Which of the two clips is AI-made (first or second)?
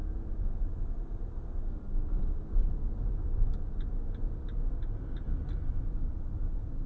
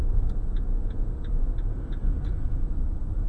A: second